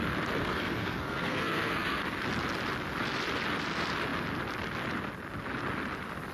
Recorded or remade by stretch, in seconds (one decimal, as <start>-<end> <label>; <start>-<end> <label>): 0.0-0.4 recorded; 0.4-2.0 remade; 2.0-6.3 recorded